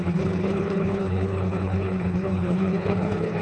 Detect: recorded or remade remade